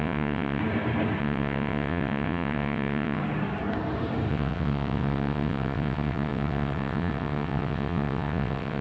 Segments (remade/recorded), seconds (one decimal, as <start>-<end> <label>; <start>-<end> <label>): 0.0-0.6 remade; 0.6-1.2 recorded; 1.2-3.2 remade; 3.2-4.3 recorded; 4.3-8.8 remade